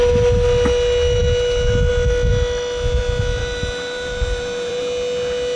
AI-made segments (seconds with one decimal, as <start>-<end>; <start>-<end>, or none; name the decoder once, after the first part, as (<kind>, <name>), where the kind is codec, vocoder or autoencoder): 3.4-4.8 (vocoder, BigVGAN v2)